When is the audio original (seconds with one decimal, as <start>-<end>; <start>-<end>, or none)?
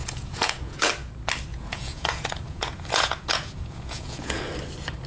0.9-1.5; 4.4-5.1